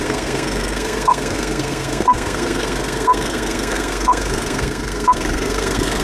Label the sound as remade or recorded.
remade